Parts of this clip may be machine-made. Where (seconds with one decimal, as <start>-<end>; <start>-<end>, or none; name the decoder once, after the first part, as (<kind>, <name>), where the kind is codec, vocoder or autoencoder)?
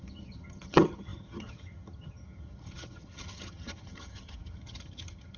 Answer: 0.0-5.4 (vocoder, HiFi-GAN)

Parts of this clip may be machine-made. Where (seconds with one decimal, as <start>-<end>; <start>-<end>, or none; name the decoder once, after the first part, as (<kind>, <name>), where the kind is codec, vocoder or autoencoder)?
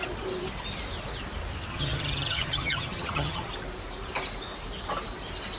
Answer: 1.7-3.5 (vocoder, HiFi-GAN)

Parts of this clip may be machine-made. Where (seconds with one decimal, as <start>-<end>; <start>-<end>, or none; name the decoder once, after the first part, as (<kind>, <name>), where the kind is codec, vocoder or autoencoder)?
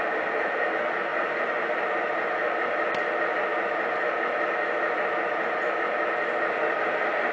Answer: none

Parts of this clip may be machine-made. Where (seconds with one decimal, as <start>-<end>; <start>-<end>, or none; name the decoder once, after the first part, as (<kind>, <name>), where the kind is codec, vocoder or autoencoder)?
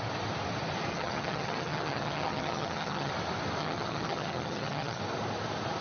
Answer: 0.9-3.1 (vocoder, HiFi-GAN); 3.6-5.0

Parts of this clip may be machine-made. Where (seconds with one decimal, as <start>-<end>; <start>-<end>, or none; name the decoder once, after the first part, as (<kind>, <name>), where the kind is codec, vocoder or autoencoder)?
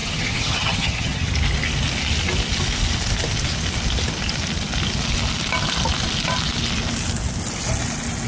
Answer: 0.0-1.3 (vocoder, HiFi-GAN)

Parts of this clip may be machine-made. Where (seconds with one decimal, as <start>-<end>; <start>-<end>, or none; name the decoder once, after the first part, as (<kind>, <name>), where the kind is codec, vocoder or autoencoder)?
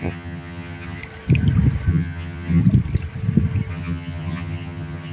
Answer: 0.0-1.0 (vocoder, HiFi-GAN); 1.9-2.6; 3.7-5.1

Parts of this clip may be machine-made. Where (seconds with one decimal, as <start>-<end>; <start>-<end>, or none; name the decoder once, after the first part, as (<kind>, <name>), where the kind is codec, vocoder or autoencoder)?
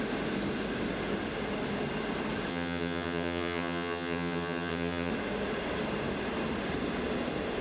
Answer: 2.5-5.1 (vocoder, HiFi-GAN)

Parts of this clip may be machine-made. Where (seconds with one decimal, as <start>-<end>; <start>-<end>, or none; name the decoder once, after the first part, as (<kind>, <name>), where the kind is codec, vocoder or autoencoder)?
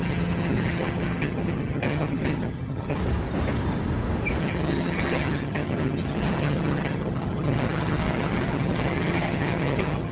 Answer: 0.0-3.0 (vocoder, HiFi-GAN); 4.4-10.1